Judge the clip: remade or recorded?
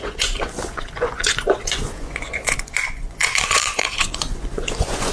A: remade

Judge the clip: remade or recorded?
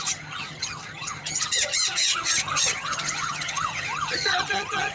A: remade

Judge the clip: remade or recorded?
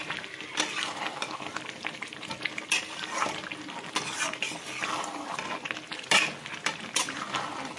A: recorded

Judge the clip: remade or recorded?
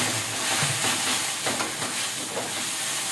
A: recorded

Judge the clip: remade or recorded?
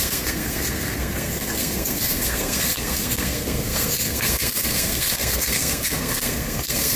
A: remade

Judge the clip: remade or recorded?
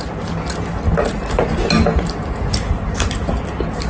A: recorded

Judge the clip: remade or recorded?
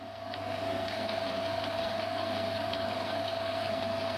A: remade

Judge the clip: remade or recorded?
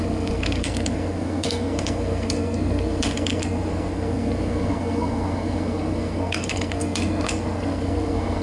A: remade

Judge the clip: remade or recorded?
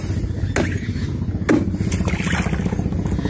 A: recorded